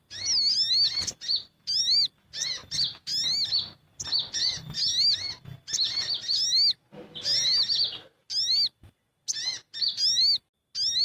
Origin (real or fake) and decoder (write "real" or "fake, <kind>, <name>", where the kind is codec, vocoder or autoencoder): real